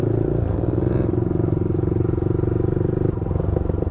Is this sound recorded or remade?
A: recorded